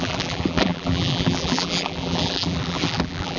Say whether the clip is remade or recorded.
remade